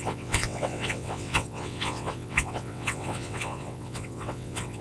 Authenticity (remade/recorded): remade